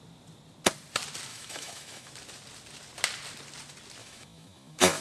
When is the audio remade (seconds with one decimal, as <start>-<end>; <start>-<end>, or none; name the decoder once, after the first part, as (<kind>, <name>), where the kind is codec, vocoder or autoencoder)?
1.3-2.1 (autoencoder, DAC-VAE); 4.0-5.0

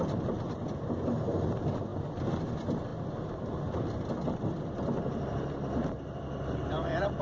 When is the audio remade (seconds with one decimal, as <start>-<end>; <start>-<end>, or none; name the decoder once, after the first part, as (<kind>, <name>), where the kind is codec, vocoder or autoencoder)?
none